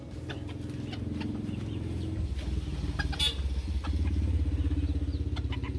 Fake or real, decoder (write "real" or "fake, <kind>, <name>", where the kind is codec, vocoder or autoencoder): real